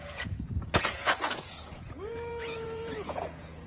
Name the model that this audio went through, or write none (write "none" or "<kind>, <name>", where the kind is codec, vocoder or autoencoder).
vocoder, Vocos